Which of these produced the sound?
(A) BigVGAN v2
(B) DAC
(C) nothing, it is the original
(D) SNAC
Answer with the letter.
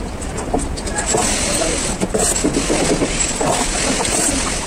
C